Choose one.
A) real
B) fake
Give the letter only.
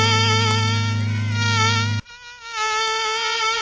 A